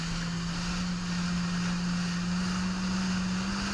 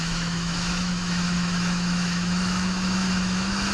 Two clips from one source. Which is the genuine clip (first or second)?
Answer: first